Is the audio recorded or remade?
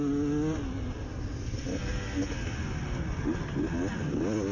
recorded